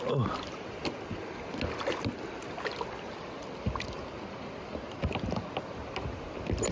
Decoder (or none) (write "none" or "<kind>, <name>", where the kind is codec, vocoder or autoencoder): none